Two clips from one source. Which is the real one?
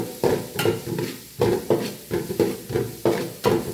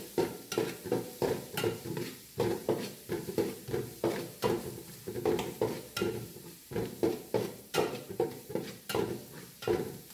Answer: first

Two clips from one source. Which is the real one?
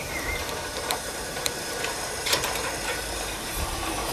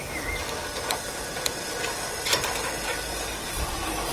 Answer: second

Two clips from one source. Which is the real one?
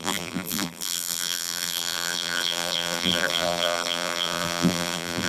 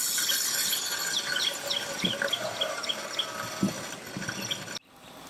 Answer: second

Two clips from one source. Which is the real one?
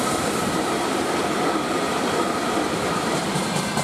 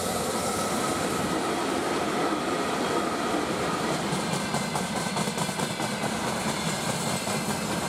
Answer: second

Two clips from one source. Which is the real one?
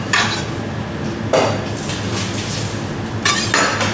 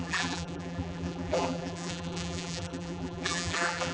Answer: first